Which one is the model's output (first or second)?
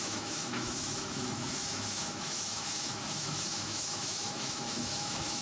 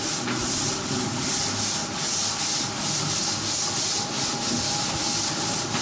first